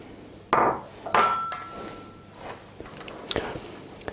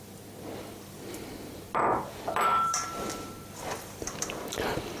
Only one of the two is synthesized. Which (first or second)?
second